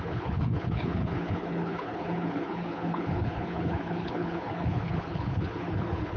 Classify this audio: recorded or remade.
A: remade